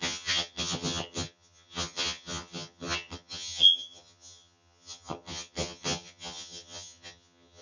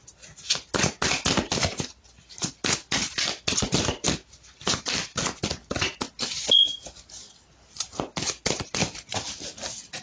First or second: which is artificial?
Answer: first